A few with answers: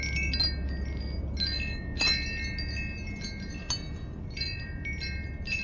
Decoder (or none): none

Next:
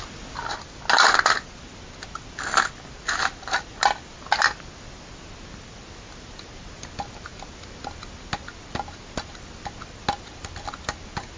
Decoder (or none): none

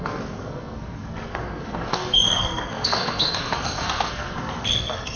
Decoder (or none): codec, SNAC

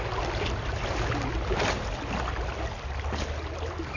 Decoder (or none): none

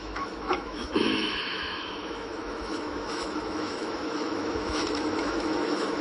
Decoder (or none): autoencoder, DAC-VAE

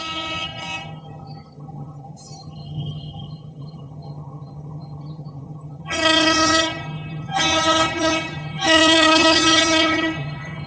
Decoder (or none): vocoder, HiFi-GAN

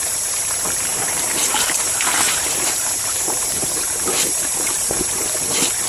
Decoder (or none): vocoder, BigVGAN v2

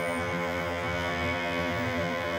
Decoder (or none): vocoder, BigVGAN v2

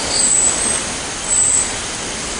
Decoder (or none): none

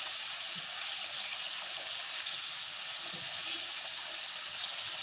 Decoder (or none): none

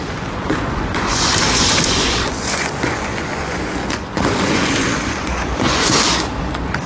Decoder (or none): vocoder, Vocos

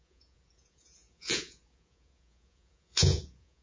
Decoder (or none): vocoder, Vocos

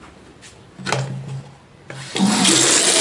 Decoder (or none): none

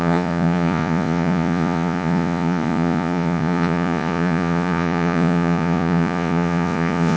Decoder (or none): vocoder, Vocos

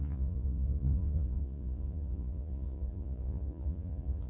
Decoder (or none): vocoder, Vocos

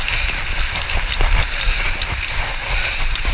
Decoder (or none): none